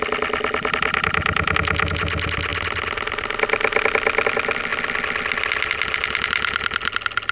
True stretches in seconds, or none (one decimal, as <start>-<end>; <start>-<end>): 0.0-7.3